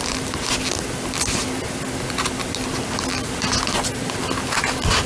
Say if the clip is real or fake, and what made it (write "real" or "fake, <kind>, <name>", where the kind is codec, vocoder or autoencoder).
real